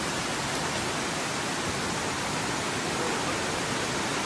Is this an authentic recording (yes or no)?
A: yes